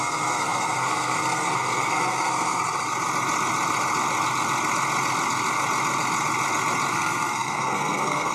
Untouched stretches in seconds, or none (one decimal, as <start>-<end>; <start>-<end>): 2.6-6.9